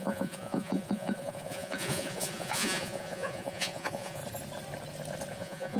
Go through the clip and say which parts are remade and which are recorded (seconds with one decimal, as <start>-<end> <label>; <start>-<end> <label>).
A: 0.0-4.2 remade; 4.2-5.3 recorded; 5.3-5.8 remade